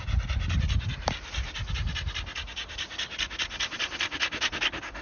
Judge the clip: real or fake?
real